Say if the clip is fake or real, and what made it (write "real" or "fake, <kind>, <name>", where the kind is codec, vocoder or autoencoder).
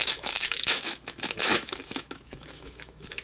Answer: fake, autoencoder, DAC-VAE